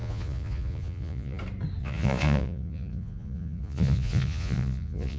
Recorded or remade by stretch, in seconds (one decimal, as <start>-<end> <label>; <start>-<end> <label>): 0.0-1.4 remade; 1.4-1.8 recorded; 1.8-5.2 remade